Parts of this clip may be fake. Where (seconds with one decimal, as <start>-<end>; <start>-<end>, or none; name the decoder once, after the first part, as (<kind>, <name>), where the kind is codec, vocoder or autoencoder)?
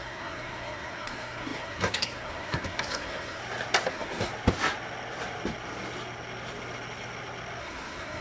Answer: 0.0-3.4 (codec, SNAC); 3.9-4.3; 7.6-8.2